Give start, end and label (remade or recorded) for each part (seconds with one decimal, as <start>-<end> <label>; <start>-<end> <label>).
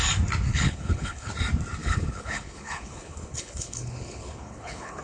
0.0-0.5 recorded; 0.5-1.3 remade; 1.3-1.8 recorded; 1.8-5.0 remade